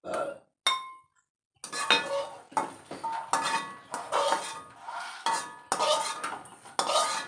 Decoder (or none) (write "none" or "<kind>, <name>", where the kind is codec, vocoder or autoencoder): none